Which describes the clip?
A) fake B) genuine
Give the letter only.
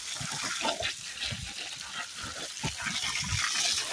B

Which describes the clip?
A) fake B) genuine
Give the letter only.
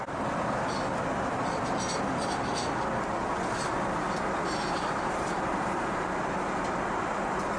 B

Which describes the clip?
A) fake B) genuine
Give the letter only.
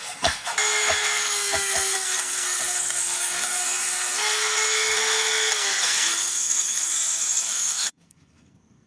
A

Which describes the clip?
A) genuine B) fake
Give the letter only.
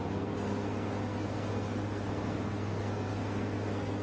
B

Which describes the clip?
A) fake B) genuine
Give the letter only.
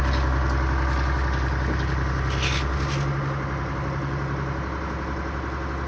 B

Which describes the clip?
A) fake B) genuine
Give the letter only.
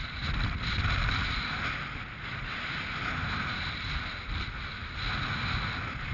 B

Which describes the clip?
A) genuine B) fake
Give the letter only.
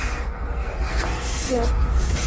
B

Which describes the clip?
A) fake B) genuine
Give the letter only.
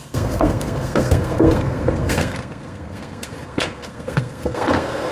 A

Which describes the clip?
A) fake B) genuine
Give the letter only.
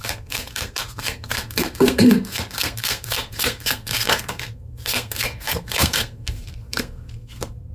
A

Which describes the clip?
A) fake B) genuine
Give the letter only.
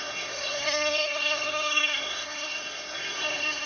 A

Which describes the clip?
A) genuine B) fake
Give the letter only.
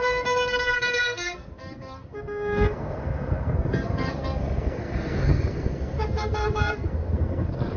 B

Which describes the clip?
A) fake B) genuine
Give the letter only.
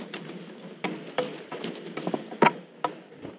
B